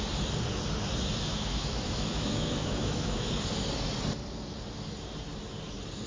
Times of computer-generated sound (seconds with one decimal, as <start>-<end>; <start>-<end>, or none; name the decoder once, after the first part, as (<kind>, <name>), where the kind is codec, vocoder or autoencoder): 1.3-3.3 (autoencoder, DAC-VAE)